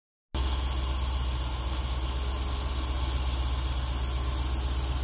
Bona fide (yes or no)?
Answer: yes